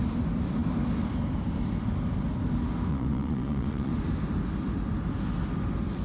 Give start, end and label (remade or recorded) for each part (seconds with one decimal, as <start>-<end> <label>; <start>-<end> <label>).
0.0-2.9 recorded; 2.9-3.9 remade; 3.9-6.0 recorded